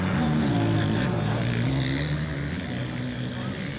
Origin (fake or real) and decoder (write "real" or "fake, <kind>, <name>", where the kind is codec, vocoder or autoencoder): real